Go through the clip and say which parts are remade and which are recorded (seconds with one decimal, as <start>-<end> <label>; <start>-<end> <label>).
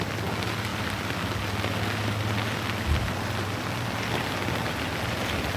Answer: 0.0-5.6 recorded